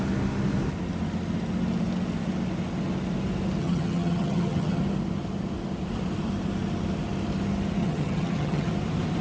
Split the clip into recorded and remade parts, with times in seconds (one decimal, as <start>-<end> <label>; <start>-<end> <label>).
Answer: 0.0-3.6 recorded; 3.6-4.8 remade; 4.8-7.8 recorded; 7.8-8.7 remade; 8.7-9.2 recorded

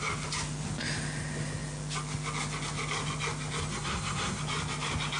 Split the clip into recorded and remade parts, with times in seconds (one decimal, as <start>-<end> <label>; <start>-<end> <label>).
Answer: 0.0-3.7 recorded; 3.7-4.4 remade; 4.4-5.2 recorded

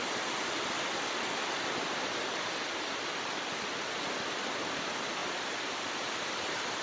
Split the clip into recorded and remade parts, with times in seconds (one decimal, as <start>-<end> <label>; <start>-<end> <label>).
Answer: 0.0-6.8 recorded

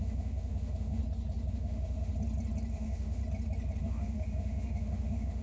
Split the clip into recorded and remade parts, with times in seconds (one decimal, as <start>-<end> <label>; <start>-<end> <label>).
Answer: 0.0-1.0 remade; 1.0-1.5 recorded; 1.5-2.1 remade; 2.1-2.7 recorded; 2.7-3.2 remade; 3.2-3.8 recorded; 3.8-5.4 remade